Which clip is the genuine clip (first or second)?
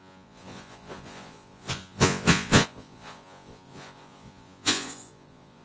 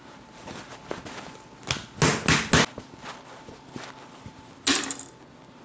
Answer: second